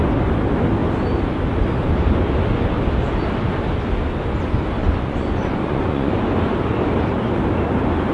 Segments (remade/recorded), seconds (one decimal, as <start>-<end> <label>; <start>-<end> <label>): 0.0-4.8 recorded; 4.8-6.2 remade; 6.2-8.1 recorded